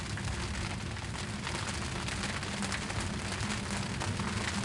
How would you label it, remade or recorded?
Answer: recorded